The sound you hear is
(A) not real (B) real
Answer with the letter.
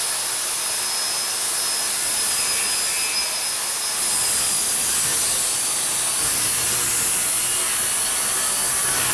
B